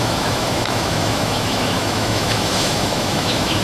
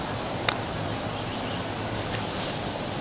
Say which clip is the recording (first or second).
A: second